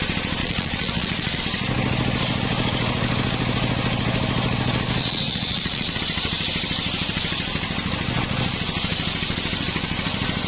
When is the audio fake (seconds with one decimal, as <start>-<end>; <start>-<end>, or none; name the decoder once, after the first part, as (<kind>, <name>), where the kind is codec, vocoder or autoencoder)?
0.4-1.4 (vocoder, Vocos); 5.0-6.0